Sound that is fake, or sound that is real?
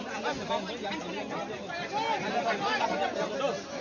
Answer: real